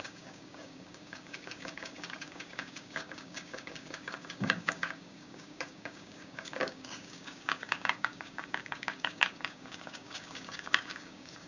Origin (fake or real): fake